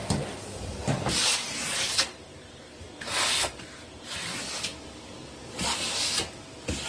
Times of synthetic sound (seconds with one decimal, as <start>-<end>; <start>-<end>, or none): none